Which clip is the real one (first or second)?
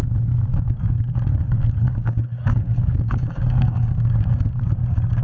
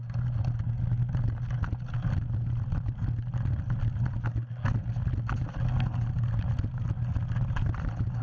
second